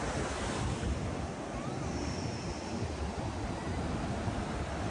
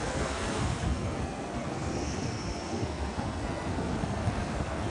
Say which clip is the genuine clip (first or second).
first